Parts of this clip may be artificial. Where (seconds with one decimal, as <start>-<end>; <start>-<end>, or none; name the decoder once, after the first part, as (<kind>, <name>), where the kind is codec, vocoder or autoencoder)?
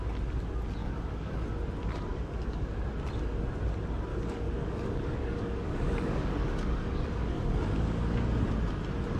0.8-1.4 (codec, DAC); 2.1-2.9; 4.1-8.4